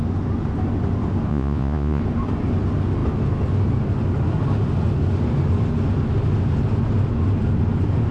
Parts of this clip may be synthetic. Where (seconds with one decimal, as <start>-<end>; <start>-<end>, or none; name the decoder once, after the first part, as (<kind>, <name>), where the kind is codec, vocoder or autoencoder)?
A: 1.3-2.0 (vocoder, Vocos)